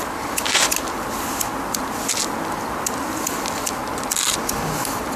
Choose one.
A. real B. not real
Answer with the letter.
A